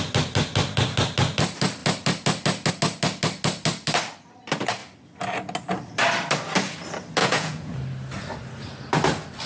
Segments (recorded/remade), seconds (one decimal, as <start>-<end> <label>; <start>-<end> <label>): 0.0-7.2 recorded; 7.2-7.7 remade; 7.7-9.5 recorded